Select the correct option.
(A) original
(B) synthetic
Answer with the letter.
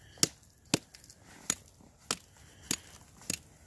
A